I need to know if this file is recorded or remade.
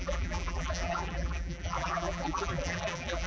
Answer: remade